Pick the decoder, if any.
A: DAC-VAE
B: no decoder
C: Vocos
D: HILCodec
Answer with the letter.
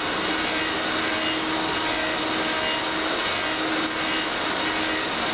B